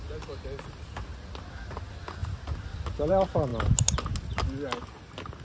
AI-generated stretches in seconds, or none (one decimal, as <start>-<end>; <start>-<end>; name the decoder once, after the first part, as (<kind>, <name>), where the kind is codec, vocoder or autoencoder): none